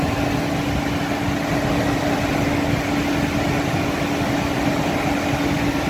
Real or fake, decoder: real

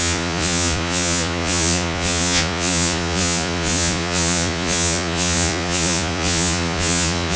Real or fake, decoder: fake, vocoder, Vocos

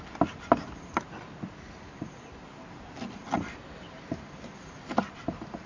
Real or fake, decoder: real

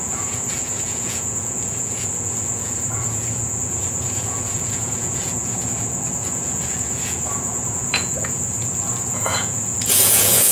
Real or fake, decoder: fake, vocoder, Vocos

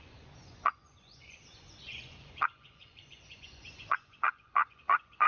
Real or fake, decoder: fake, vocoder, Vocos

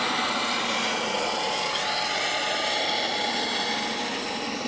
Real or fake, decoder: real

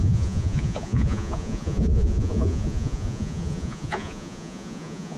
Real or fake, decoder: fake, vocoder, Vocos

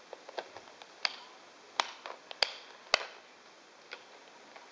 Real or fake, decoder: real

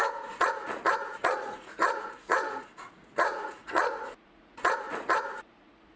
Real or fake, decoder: fake, vocoder, Vocos